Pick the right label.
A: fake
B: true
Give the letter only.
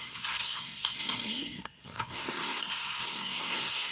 A